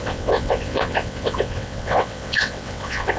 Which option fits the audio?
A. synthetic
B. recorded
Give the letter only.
A